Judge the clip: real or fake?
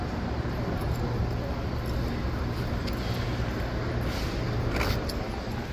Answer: real